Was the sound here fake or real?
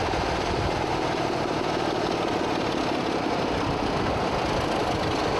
real